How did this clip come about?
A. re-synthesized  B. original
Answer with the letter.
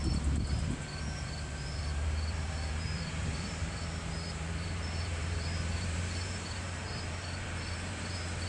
A